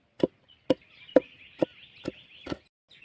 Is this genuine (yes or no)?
yes